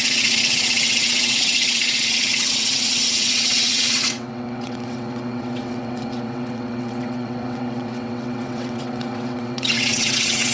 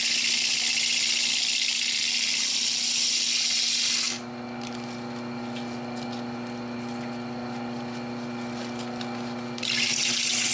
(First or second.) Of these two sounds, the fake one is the first